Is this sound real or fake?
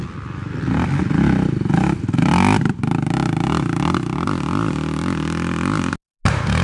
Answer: real